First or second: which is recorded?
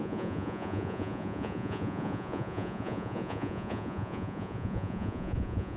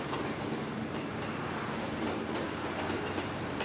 second